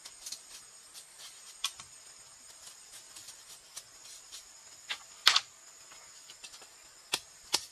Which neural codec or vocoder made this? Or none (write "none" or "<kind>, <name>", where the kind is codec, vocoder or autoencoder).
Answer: none